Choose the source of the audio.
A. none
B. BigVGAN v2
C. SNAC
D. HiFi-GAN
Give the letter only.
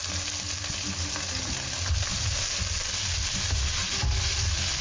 A